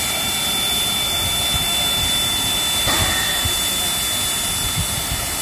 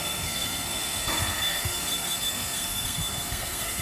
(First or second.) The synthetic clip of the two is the second